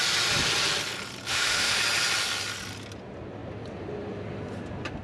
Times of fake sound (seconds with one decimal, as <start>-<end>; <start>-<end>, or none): 1.3-1.8